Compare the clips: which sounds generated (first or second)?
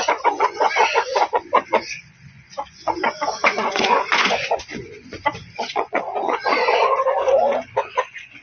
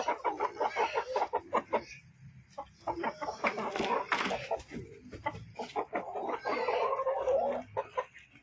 first